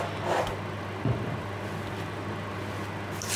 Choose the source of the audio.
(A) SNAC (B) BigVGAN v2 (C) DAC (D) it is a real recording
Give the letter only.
D